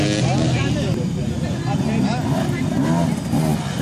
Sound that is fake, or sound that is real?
real